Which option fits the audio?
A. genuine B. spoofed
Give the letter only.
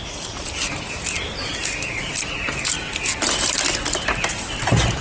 A